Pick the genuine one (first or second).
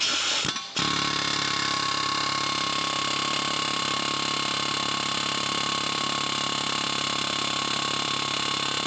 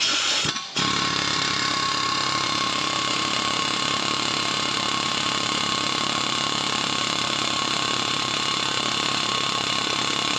first